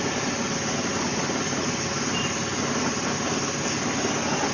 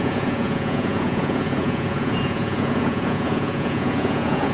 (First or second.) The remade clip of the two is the second